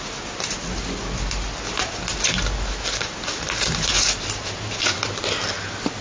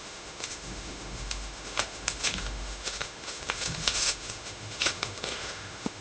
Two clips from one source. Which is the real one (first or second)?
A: first